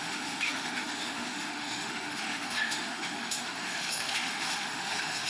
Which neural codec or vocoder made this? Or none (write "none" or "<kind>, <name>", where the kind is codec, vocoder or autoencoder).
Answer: autoencoder, DAC-VAE